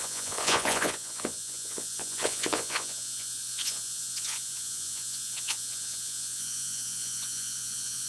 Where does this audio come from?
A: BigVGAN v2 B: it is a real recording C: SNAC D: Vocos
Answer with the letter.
D